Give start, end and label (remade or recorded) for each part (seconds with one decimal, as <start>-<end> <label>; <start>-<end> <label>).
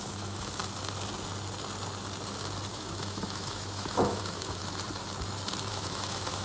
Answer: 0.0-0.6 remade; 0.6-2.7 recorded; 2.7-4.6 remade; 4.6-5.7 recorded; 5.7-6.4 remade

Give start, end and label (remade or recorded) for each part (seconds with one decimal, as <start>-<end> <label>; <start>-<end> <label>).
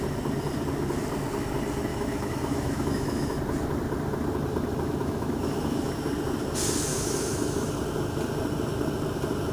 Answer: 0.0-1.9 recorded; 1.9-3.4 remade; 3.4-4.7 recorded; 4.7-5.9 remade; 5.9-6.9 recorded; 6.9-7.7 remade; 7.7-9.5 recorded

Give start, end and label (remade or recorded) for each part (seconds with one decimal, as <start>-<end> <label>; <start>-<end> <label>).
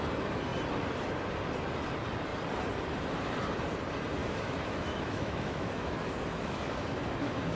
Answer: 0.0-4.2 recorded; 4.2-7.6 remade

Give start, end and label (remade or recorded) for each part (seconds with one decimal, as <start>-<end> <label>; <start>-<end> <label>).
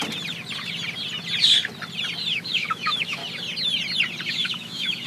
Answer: 0.0-2.3 recorded; 2.3-3.2 remade; 3.2-4.3 recorded; 4.3-5.1 remade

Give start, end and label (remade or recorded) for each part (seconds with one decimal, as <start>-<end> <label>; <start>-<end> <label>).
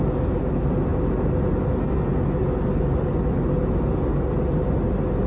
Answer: 0.0-5.3 recorded